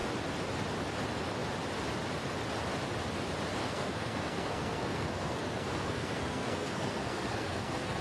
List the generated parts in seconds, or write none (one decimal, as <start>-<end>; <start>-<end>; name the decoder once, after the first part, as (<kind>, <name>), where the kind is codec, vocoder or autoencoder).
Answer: 3.6-8.0 (codec, SNAC)